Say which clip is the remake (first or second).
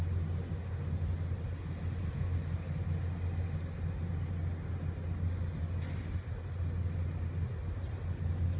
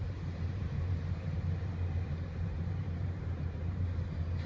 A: second